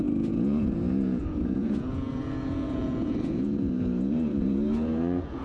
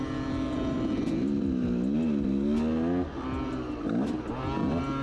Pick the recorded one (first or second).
second